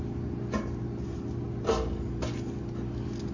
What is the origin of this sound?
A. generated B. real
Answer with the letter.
B